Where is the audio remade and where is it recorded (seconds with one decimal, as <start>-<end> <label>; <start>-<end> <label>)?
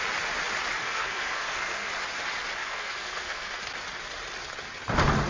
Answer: 0.0-0.8 recorded; 0.8-1.9 remade; 1.9-2.6 recorded; 2.6-3.6 remade; 3.6-5.3 recorded